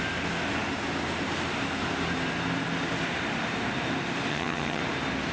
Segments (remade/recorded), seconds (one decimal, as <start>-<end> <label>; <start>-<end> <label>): 0.0-4.3 recorded; 4.3-4.8 remade; 4.8-5.3 recorded